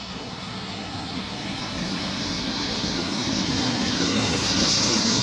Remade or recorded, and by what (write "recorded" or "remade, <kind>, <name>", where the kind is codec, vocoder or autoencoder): remade, codec, SNAC